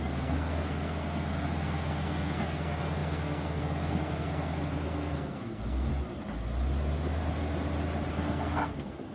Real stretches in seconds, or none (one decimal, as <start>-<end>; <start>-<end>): 5.9-8.1